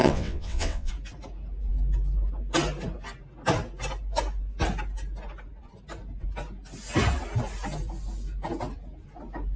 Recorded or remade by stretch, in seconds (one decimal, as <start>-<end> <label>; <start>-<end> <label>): 0.0-0.9 remade; 0.9-9.6 recorded